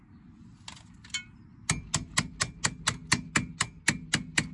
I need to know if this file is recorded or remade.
recorded